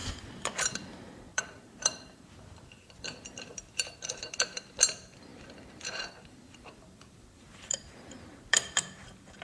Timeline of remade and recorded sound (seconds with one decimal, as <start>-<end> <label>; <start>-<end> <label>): 0.0-5.3 remade; 5.3-5.9 recorded; 5.9-9.4 remade